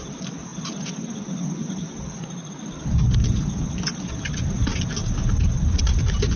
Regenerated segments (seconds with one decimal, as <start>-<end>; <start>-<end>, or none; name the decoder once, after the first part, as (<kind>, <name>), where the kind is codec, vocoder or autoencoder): none